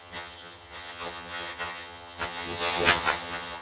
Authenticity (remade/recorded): remade